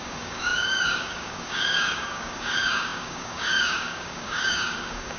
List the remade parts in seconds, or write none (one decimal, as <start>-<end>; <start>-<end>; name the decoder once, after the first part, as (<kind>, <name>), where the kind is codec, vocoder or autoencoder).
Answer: 0.0-5.2 (codec, DAC)